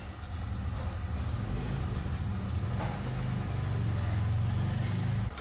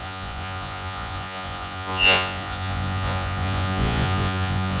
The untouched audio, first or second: first